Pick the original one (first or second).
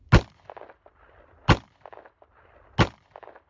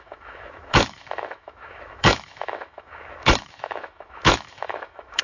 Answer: first